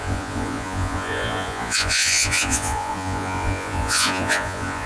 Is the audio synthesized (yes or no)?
yes